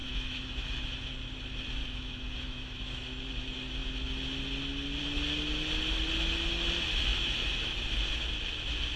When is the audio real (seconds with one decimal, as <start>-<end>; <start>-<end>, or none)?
0.9-1.8; 3.0-7.1; 7.8-9.0